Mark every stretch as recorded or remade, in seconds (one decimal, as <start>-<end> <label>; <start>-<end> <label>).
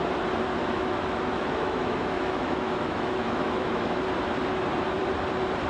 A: 0.0-0.6 recorded; 0.6-4.0 remade; 4.0-5.7 recorded